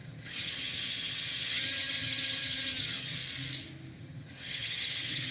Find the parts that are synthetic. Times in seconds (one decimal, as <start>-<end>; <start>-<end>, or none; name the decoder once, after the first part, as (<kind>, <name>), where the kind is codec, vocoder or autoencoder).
0.0-3.2 (vocoder, HiFi-GAN); 4.0-5.3